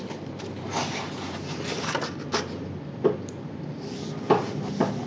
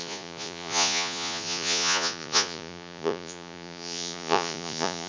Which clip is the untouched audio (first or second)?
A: first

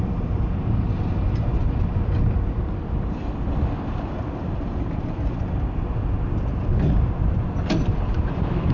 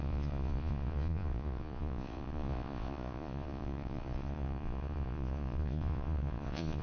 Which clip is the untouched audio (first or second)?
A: first